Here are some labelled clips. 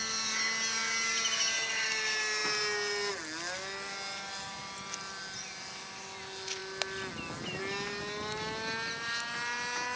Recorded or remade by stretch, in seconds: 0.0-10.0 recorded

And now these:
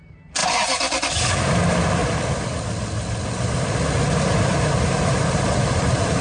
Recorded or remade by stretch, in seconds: 0.0-2.0 remade; 2.0-4.2 recorded; 4.2-6.2 remade

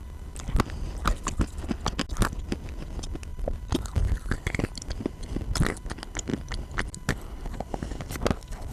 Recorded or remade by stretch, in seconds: 0.0-3.3 recorded; 3.3-5.6 remade; 5.6-6.3 recorded; 6.3-7.7 remade; 7.7-8.7 recorded

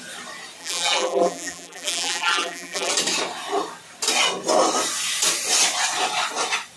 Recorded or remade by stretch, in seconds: 0.0-0.6 recorded; 0.6-2.9 remade; 2.9-6.8 recorded

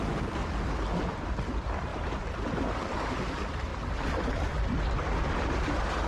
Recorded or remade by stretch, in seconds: 0.0-0.4 remade; 0.4-1.0 recorded; 1.0-1.9 remade; 1.9-3.1 recorded; 3.1-6.1 remade

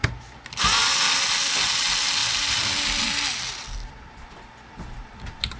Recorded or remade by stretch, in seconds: 0.0-0.8 remade; 0.8-2.2 recorded; 2.2-5.6 remade

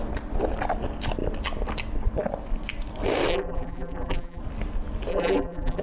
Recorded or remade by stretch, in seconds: 0.0-3.3 recorded; 3.3-4.4 remade; 4.4-5.1 recorded; 5.1-5.8 remade

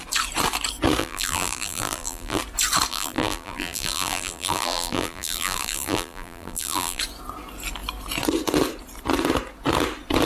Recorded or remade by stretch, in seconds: 0.0-1.0 recorded; 1.0-2.4 remade; 2.4-2.9 recorded; 2.9-7.0 remade; 7.0-10.3 recorded